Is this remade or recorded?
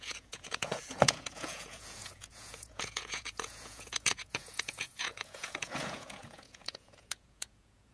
remade